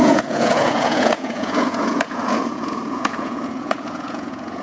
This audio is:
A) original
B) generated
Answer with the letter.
B